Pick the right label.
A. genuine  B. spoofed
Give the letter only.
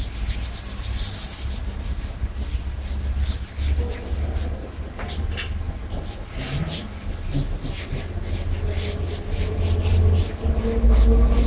A